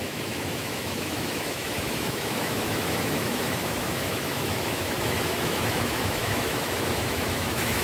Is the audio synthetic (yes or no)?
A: yes